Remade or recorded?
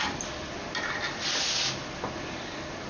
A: recorded